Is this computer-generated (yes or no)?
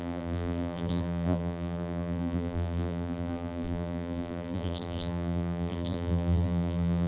yes